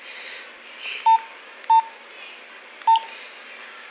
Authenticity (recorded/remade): recorded